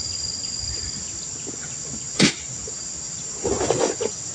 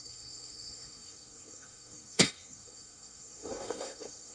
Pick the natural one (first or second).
first